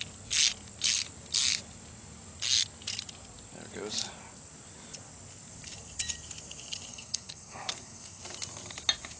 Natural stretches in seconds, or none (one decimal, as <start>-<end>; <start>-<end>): 0.0-6.9; 8.2-9.2